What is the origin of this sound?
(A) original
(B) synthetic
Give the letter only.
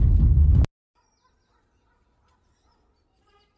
A